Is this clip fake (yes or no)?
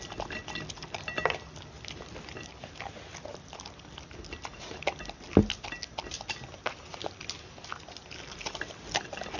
no